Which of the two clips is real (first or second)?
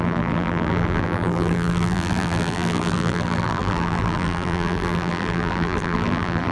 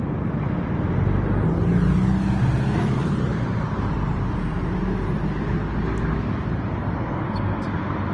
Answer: second